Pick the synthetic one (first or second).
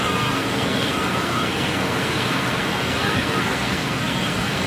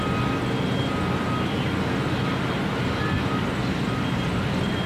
first